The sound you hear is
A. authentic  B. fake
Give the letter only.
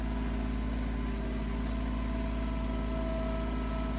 A